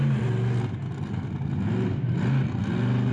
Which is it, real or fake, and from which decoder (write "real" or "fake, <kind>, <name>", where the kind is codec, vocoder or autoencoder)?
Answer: real